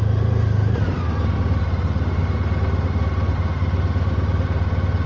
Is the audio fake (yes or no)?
no